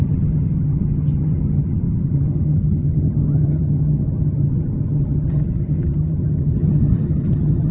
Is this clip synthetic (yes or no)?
yes